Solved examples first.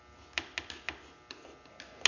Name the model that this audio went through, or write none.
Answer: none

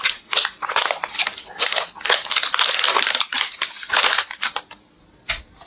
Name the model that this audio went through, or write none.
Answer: none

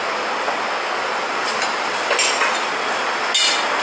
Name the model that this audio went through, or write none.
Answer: none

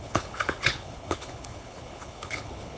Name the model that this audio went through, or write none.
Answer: codec, HILCodec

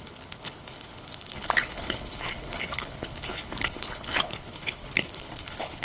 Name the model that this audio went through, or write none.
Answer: codec, HILCodec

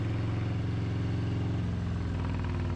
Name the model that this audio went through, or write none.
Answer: none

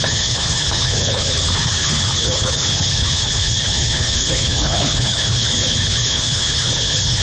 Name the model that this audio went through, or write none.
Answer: codec, HILCodec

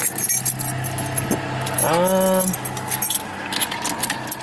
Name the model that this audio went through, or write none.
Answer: none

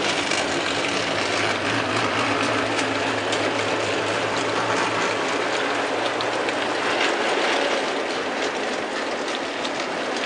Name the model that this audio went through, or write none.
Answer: none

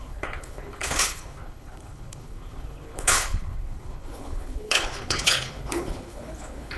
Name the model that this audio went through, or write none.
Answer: codec, HILCodec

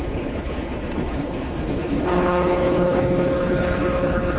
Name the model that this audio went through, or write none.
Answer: codec, HILCodec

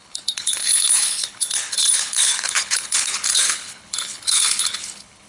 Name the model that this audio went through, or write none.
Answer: codec, HILCodec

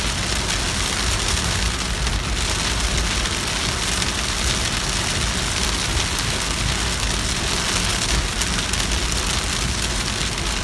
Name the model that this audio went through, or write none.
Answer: none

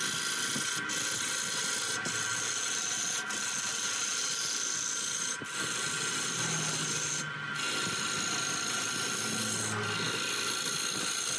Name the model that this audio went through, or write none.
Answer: none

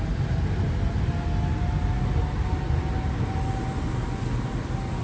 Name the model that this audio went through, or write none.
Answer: none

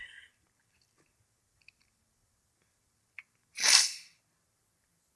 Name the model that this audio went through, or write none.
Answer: none